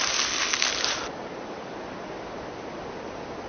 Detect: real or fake real